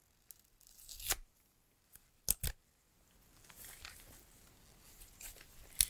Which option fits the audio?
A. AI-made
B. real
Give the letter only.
B